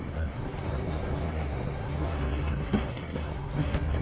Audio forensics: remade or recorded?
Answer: remade